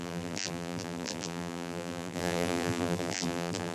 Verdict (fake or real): fake